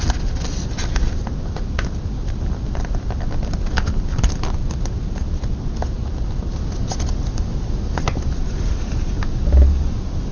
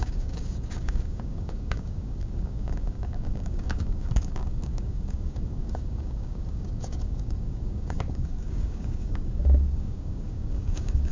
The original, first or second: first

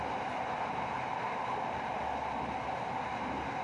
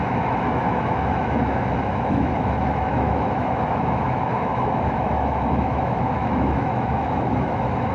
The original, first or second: first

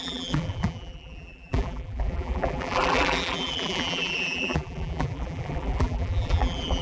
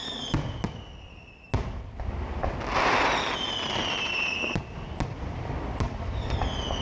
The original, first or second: second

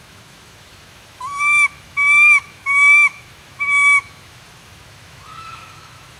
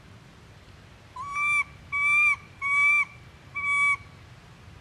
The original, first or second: second